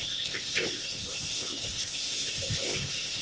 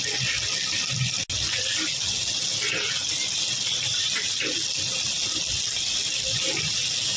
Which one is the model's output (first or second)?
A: first